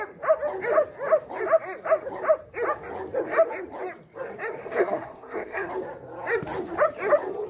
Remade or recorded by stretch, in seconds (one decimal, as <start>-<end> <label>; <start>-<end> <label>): 0.0-4.6 recorded; 4.6-5.7 remade; 5.7-7.5 recorded